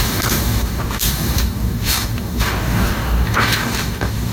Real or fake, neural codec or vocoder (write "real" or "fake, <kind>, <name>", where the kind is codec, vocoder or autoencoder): fake, codec, DAC